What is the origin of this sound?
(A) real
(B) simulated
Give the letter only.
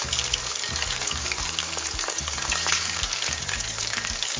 B